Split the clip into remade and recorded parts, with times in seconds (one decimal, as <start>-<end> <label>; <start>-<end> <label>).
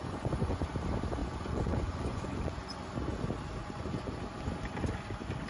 0.0-0.7 remade; 0.7-1.2 recorded; 1.2-2.8 remade; 2.8-3.6 recorded; 3.6-4.2 remade; 4.2-5.5 recorded